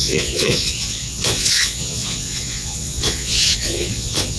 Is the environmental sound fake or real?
fake